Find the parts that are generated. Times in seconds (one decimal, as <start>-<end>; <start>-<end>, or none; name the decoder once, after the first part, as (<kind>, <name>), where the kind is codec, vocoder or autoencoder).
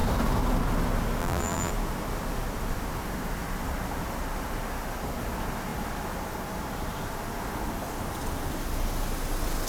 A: 1.2-1.7 (vocoder, BigVGAN v2)